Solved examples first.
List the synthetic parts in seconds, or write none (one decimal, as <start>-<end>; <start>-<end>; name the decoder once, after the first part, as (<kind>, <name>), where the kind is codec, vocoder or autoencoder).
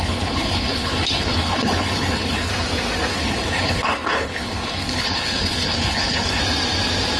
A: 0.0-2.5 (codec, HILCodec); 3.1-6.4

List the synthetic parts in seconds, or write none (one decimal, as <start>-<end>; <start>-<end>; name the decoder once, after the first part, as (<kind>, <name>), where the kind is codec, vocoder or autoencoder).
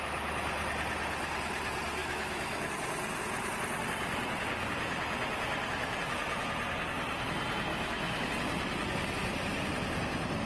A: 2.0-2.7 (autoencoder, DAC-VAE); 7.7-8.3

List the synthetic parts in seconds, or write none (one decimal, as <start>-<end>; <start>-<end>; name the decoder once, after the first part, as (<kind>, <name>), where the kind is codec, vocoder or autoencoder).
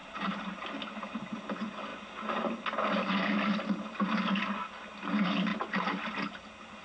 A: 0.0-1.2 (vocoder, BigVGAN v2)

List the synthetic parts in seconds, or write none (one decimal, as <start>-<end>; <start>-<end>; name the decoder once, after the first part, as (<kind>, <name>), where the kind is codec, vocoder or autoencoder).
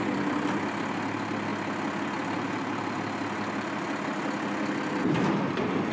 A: none